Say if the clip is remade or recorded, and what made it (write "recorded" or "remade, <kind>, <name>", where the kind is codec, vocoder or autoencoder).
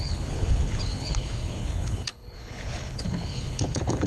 remade, codec, HILCodec